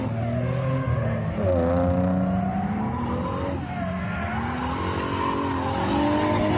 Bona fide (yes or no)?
yes